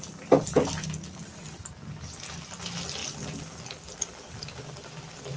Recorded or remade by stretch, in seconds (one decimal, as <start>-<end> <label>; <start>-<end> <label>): 0.0-5.4 recorded